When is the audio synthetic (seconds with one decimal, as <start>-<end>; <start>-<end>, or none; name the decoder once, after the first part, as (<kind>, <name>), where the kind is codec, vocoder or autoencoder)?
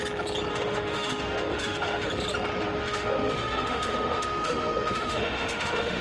0.5-2.1 (autoencoder, DAC-VAE); 2.6-6.0